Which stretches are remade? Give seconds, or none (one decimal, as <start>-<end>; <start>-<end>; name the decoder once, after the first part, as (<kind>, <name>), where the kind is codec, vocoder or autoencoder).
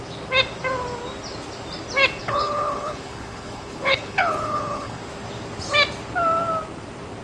2.2-5.0 (codec, HILCodec)